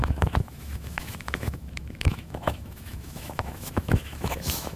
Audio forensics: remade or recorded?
remade